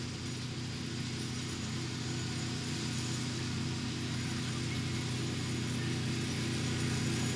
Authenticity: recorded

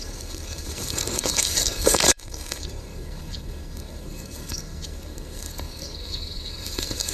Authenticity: remade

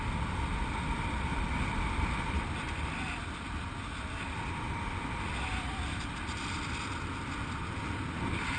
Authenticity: recorded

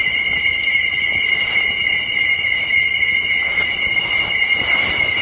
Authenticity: remade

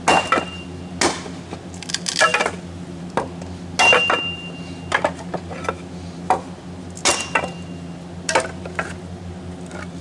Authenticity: recorded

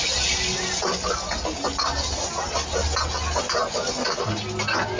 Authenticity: recorded